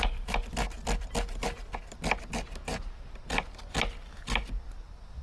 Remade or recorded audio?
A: recorded